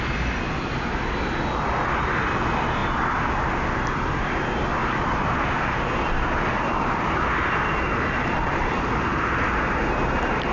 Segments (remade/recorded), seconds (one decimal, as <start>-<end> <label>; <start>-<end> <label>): 0.0-4.8 recorded; 4.8-8.9 remade; 8.9-10.5 recorded